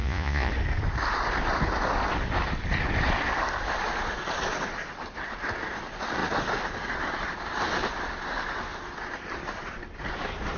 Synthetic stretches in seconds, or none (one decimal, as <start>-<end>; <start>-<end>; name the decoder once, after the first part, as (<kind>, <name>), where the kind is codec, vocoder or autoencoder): 0.0-0.5 (vocoder, Vocos)